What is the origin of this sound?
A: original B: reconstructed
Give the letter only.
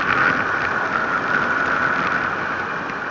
A